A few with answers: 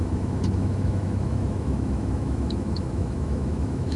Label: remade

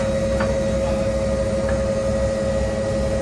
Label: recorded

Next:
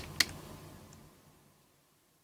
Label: recorded